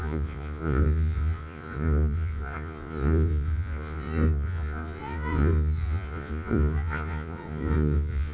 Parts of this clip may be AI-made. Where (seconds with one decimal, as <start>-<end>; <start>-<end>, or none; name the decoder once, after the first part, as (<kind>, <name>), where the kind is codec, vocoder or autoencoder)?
0.0-8.3 (vocoder, Vocos)